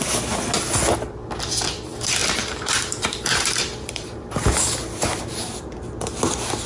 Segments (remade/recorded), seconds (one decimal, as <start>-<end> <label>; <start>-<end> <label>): 0.0-2.2 recorded; 2.2-4.6 remade; 4.6-6.7 recorded